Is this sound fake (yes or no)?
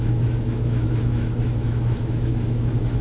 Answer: yes